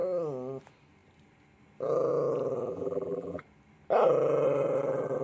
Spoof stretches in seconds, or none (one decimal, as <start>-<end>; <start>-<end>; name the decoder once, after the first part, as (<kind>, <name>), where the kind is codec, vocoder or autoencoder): 2.7-3.4 (vocoder, BigVGAN v2)